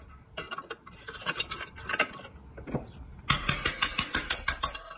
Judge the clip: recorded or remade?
recorded